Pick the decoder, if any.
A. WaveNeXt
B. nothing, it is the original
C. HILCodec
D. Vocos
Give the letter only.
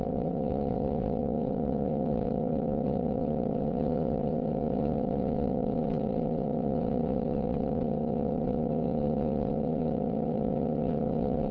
A